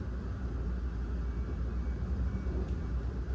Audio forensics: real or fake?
real